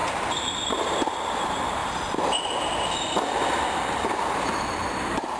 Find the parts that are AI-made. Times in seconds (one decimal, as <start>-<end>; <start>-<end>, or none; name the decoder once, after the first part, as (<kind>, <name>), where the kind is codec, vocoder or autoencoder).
0.0-1.8 (vocoder, BigVGAN v2); 4.9-5.4